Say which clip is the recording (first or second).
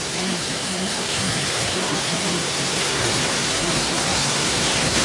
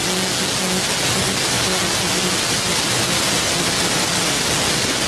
second